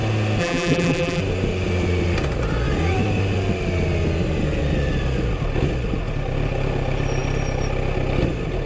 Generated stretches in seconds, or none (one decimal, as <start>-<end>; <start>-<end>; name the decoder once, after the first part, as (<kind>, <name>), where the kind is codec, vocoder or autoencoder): 0.4-1.2 (vocoder, BigVGAN v2)

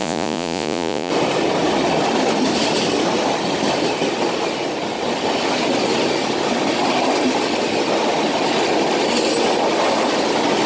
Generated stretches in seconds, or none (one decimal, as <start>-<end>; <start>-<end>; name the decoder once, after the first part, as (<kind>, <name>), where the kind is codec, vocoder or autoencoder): 0.0-1.1 (vocoder, Vocos)

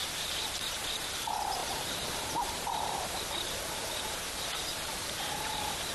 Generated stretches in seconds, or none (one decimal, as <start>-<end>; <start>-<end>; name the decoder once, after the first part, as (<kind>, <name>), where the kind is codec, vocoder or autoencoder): 0.0-5.9 (vocoder, BigVGAN v2)

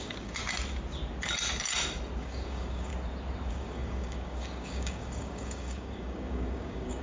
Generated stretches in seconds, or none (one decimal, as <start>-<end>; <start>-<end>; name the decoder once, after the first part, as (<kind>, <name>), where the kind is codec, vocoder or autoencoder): 0.0-0.4 (codec, DAC); 2.2-2.9; 3.5-7.0

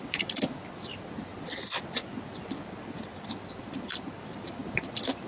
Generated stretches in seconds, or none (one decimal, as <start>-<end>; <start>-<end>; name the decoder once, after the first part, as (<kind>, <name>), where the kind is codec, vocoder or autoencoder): 3.1-3.7 (vocoder, BigVGAN v2)

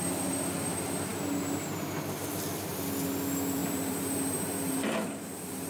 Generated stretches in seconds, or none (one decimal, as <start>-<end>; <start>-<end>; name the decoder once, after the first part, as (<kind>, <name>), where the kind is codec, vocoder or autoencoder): 3.6-5.7 (vocoder, BigVGAN v2)

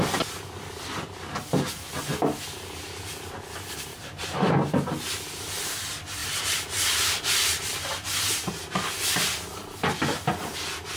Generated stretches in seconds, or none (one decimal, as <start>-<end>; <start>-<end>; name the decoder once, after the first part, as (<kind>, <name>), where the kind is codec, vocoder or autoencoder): 3.9-4.7 (vocoder, BigVGAN v2); 6.2-8.4

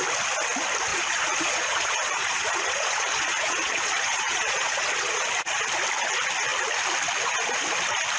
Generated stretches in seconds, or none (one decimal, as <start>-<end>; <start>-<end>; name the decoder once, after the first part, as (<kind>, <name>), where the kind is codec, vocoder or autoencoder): 0.9-5.2 (vocoder, Vocos)